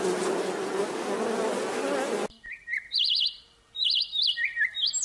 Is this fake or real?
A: real